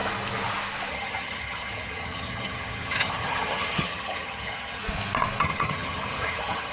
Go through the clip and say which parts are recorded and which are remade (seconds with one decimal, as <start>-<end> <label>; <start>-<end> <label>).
0.0-0.9 recorded; 0.9-4.8 remade; 4.8-5.4 recorded; 5.4-6.7 remade